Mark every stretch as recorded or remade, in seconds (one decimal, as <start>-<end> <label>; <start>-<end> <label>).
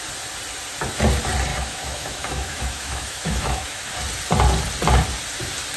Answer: 0.0-1.5 recorded; 1.5-3.9 remade; 3.9-5.8 recorded